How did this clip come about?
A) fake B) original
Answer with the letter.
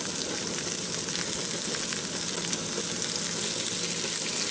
B